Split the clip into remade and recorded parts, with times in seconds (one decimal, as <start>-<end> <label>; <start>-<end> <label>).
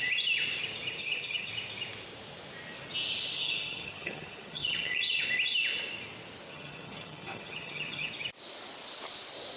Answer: 0.0-1.0 recorded; 1.0-1.5 remade; 1.5-3.4 recorded; 3.4-5.2 remade; 5.2-6.5 recorded; 6.5-8.1 remade; 8.1-9.6 recorded